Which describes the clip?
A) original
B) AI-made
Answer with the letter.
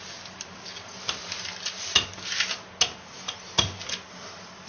A